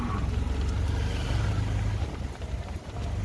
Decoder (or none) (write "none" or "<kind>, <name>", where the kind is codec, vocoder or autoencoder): none